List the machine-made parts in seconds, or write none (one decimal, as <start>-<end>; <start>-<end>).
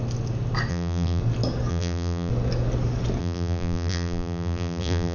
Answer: 0.7-1.2; 1.7-2.3; 3.2-5.1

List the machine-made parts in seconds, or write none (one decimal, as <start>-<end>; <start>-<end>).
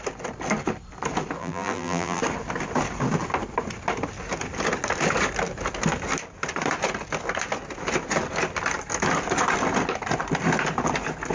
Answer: 1.4-2.2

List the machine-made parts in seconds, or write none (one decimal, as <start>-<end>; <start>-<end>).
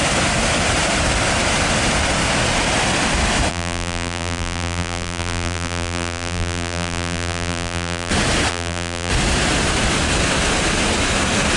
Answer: 3.5-8.1; 8.5-9.1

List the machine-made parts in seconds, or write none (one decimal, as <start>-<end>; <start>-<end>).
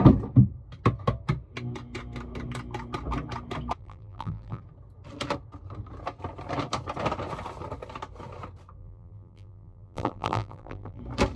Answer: 3.8-4.6; 8.8-11.0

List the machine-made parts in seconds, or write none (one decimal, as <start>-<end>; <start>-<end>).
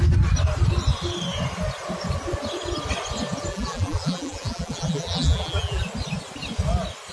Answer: 3.5-5.8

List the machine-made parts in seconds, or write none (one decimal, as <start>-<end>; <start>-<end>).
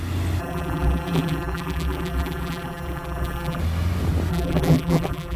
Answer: 0.4-3.6; 4.3-5.4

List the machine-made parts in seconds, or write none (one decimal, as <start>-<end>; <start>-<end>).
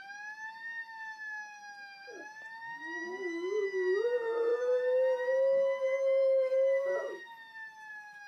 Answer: none